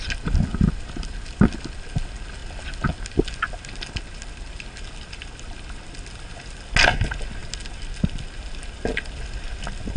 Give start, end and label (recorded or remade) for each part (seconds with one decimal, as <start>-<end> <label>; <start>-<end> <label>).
0.0-10.0 recorded